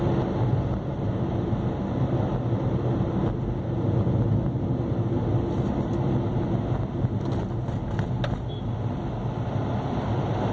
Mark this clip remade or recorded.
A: recorded